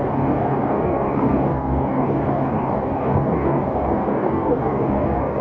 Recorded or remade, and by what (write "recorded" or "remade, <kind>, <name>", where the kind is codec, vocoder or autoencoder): remade, codec, DAC